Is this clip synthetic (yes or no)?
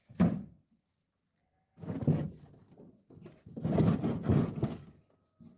no